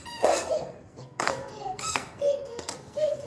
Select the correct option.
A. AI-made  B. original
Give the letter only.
A